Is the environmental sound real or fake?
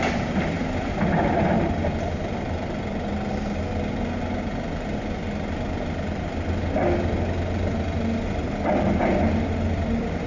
real